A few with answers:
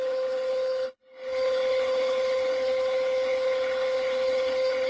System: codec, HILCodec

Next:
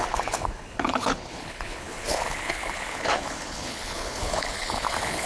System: codec, HILCodec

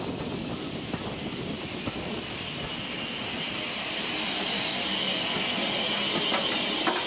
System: none